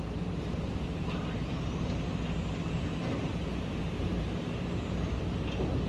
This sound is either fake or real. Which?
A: real